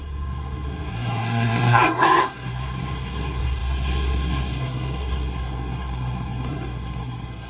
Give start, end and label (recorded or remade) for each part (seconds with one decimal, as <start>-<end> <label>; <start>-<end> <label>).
0.0-7.5 remade